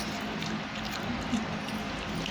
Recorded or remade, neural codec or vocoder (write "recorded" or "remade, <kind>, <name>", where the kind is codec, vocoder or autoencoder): recorded